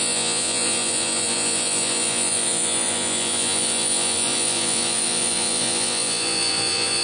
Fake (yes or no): yes